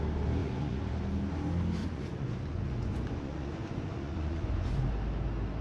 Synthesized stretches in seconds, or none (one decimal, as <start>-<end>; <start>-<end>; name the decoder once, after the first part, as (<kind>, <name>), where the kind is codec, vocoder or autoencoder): 0.4-0.9 (vocoder, Vocos); 1.8-4.9